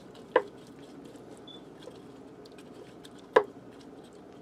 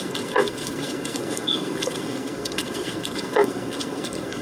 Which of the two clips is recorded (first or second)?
first